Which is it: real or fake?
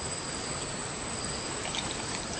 real